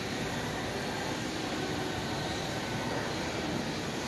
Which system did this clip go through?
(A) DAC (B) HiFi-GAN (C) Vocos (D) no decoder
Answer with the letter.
D